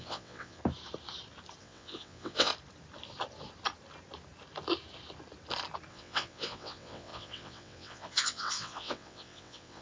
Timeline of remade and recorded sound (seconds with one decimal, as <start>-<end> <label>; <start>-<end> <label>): 0.0-0.6 remade; 0.6-1.6 recorded; 1.6-2.5 remade; 2.5-5.9 recorded; 5.9-9.8 remade